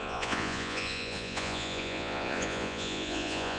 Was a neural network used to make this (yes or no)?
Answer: yes